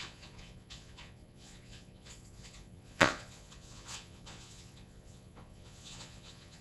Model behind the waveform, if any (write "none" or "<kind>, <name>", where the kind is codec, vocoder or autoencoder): vocoder, Vocos